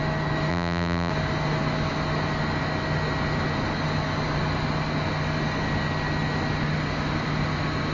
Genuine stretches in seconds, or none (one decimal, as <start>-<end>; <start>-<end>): 0.0-0.5; 1.1-7.9